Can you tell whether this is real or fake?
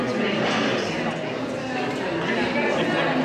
real